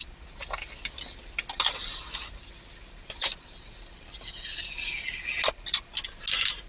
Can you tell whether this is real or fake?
real